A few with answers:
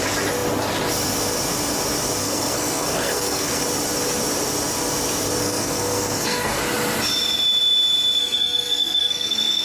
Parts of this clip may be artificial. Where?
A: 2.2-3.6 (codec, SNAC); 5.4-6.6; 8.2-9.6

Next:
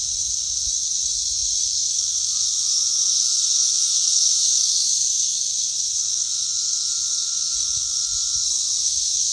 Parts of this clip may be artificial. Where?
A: 0.0-9.3 (codec, SNAC)

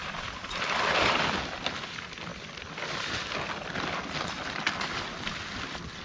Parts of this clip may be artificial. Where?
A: none

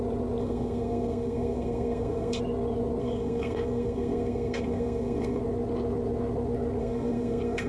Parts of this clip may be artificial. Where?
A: 0.4-2.4 (codec, SNAC); 3.0-5.4; 6.8-7.7

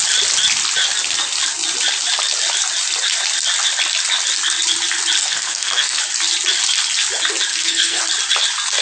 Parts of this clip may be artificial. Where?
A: 5.2-6.0 (codec, SNAC); 7.5-8.0